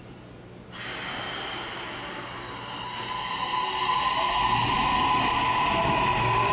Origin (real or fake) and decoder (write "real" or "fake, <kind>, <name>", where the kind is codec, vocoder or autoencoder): real